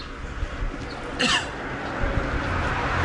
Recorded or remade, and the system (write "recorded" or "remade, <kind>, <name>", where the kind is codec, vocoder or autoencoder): recorded